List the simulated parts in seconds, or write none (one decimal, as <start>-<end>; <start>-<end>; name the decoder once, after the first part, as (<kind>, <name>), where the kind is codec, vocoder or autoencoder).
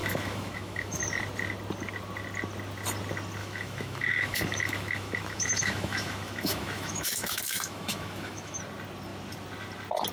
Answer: 0.0-1.0 (autoencoder, DAC-VAE); 3.4-8.6